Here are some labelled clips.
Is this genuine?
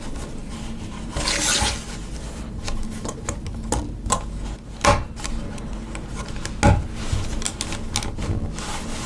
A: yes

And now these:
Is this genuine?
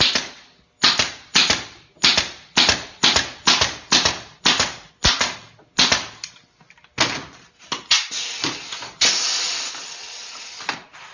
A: yes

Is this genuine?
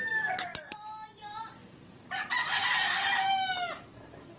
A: yes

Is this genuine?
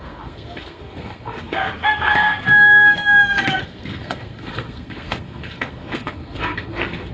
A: no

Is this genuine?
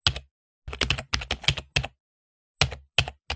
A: yes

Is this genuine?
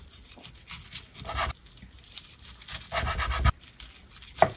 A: yes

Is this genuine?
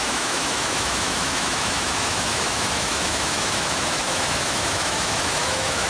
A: no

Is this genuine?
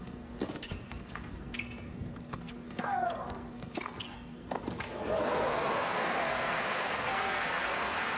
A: no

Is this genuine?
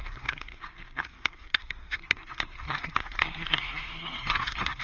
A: no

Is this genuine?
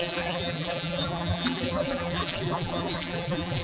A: no